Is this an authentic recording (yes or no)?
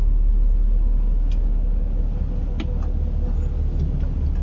yes